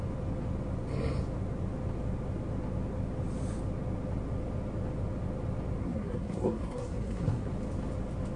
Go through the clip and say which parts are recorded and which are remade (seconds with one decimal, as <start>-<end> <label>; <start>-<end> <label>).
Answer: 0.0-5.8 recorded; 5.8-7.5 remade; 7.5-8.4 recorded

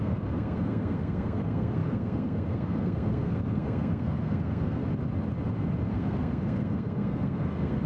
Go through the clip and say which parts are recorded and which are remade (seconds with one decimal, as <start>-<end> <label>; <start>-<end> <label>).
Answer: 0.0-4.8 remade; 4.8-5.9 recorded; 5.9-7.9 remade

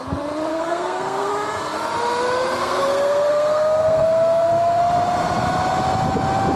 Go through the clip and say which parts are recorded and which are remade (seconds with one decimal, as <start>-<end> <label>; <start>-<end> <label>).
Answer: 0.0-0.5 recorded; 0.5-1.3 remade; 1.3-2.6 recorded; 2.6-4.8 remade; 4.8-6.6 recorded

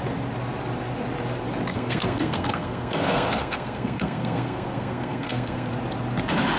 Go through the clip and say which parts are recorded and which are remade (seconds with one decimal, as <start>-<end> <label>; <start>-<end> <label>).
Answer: 0.0-1.7 recorded; 1.7-5.7 remade; 5.7-6.6 recorded

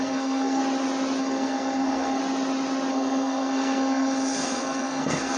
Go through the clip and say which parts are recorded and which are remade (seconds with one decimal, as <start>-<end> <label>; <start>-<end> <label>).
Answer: 0.0-0.6 remade; 0.6-1.2 recorded; 1.2-2.2 remade; 2.2-2.9 recorded; 2.9-5.4 remade

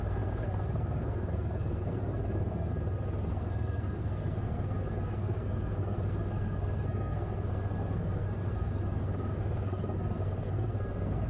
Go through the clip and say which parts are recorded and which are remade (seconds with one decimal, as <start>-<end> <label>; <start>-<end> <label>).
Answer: 0.0-2.7 remade; 2.7-3.3 recorded; 3.3-11.3 remade